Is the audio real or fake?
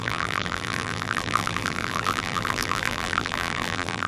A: fake